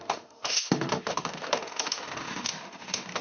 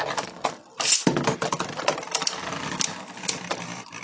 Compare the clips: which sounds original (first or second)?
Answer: second